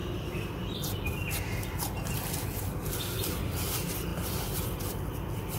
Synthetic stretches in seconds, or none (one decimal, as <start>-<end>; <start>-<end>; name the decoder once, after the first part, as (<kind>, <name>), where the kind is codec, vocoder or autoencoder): 4.1-4.8 (vocoder, BigVGAN v2)